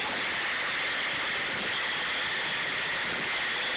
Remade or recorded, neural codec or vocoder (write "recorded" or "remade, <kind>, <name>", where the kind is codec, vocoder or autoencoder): recorded